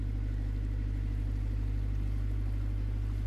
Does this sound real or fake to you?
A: real